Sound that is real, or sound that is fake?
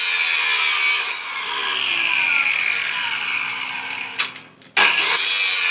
real